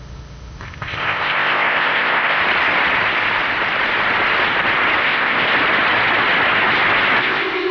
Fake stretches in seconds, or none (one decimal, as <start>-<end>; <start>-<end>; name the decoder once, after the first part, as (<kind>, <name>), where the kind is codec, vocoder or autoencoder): 0.0-2.4 (codec, ZipCodec); 5.0-5.5; 7.2-7.7